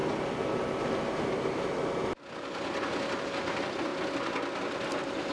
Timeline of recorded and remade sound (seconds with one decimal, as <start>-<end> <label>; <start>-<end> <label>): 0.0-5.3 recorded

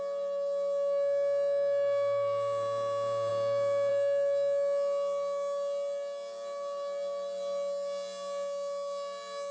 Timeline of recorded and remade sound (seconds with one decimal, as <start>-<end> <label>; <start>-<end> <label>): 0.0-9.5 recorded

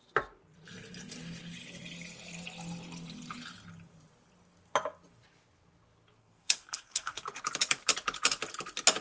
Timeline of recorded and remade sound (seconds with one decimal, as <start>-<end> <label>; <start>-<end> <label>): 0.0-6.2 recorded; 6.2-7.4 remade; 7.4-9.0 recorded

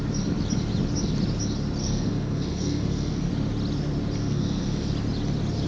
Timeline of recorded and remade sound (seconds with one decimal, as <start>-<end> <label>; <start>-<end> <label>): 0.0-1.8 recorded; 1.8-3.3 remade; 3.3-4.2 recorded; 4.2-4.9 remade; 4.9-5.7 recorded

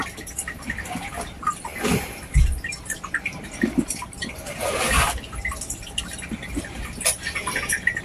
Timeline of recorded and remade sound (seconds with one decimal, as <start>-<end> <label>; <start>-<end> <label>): 0.0-8.0 recorded

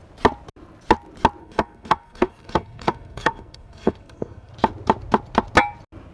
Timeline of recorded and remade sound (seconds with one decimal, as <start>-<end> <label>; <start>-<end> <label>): 0.0-1.4 recorded; 1.4-4.5 remade; 4.5-6.1 recorded

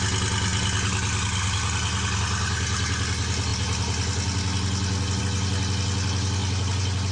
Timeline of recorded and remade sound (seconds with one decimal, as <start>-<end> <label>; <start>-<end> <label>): 0.0-7.1 recorded

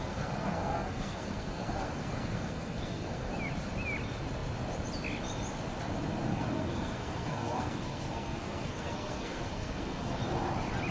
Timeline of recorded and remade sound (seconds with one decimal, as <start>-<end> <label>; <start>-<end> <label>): 0.0-3.3 remade; 3.3-6.3 recorded; 6.3-10.2 remade; 10.2-10.9 recorded